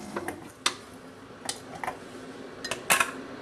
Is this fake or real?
real